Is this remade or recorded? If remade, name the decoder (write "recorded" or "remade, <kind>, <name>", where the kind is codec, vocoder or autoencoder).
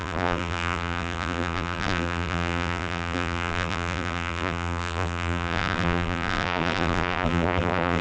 remade, vocoder, BigVGAN v2